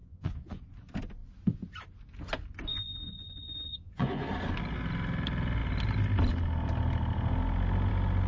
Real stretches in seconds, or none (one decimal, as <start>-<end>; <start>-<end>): 0.6-2.7; 4.3-8.3